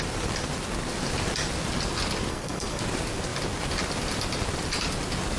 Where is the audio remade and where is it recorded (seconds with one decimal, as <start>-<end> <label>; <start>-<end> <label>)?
0.0-2.3 recorded; 2.3-2.8 remade; 2.8-5.4 recorded

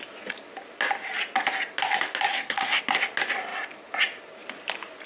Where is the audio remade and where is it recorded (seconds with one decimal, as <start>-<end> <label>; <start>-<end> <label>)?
0.0-2.3 recorded; 2.3-2.8 remade; 2.8-5.1 recorded

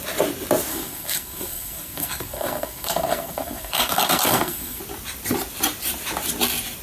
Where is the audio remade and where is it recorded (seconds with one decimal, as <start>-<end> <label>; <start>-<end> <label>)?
0.0-0.7 recorded; 0.7-4.8 remade; 4.8-6.8 recorded

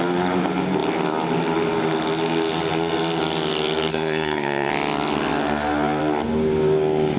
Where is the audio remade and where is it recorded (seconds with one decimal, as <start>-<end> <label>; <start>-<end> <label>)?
0.0-3.9 recorded; 3.9-4.7 remade; 4.7-7.2 recorded

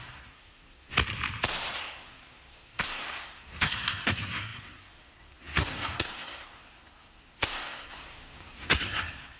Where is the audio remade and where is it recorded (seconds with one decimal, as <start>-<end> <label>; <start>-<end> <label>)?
0.0-0.9 remade; 0.9-1.8 recorded; 1.8-9.4 remade